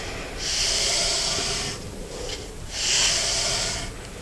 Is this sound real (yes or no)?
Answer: yes